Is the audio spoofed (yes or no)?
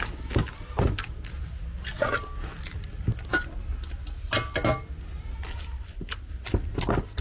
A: no